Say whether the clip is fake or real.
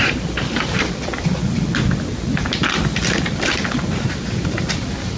real